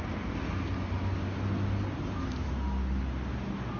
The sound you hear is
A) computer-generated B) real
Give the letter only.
B